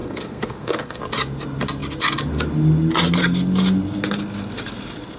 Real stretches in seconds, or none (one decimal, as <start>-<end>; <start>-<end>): 1.0-5.2